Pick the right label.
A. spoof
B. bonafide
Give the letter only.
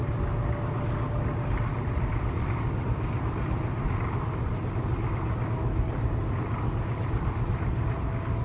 B